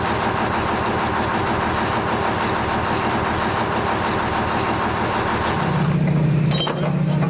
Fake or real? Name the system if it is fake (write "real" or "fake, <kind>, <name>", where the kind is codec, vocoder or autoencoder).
real